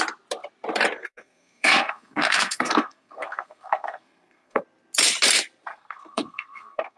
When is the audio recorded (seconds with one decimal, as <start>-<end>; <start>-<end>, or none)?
0.0-1.0; 4.6-5.7